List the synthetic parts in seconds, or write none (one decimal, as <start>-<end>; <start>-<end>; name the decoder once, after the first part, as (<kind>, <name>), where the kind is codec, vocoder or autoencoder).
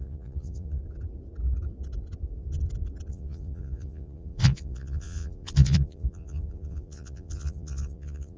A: 0.0-0.8 (vocoder, Vocos); 3.1-8.4